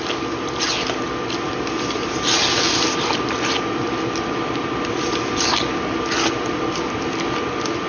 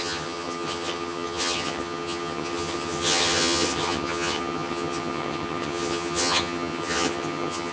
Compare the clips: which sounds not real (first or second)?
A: second